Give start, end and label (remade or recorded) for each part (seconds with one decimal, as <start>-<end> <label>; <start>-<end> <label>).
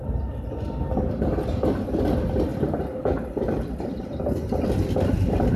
0.0-5.6 recorded